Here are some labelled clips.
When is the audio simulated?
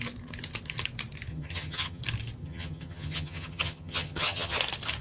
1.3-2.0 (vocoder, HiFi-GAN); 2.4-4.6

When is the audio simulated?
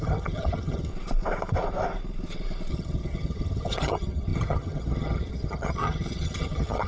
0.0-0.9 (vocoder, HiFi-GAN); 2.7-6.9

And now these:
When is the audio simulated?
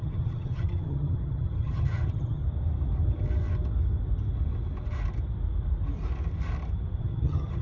0.0-2.4 (vocoder, HiFi-GAN); 7.0-7.6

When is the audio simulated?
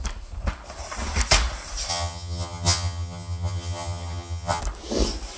1.9-4.6 (vocoder, HiFi-GAN)